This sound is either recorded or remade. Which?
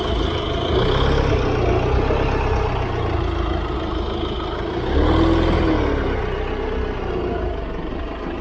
recorded